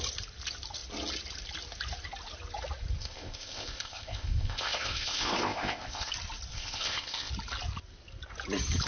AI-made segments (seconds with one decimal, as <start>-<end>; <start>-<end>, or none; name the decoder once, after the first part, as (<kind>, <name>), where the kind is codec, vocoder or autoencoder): 3.0-6.1 (codec, ZipCodec); 6.5-7.3